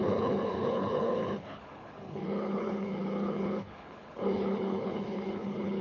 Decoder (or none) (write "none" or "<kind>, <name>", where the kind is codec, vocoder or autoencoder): codec, HILCodec